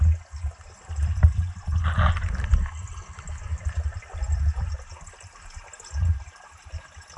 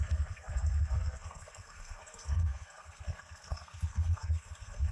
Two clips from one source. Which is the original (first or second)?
first